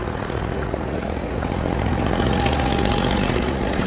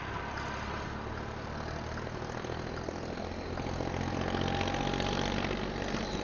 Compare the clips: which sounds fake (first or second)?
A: first